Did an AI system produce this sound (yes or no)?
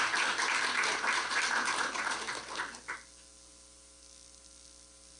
no